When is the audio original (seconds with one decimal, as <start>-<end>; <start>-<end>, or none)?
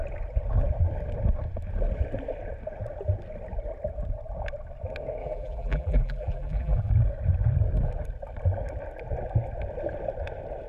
0.0-5.2; 6.9-10.7